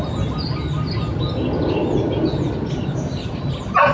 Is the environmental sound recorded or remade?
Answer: recorded